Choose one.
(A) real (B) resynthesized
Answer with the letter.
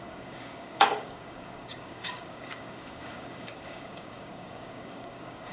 B